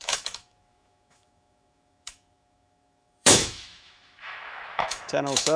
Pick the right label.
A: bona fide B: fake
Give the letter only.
B